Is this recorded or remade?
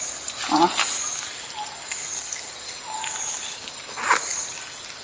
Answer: recorded